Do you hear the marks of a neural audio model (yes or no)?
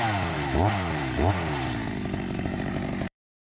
yes